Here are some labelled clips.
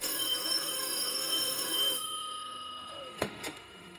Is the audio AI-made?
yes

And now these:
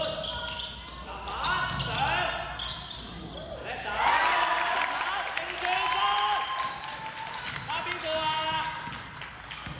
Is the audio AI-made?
no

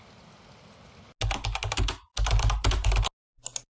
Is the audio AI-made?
no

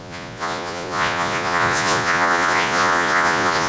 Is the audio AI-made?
yes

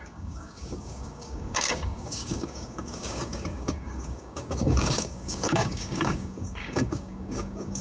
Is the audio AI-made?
yes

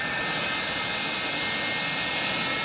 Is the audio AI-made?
no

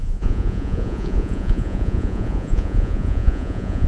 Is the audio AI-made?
yes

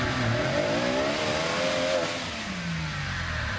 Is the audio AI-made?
no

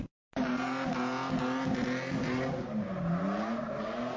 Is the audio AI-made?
no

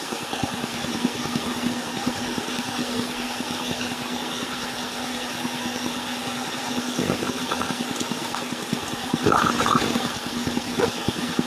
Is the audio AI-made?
yes